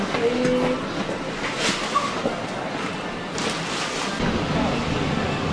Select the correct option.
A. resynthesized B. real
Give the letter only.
B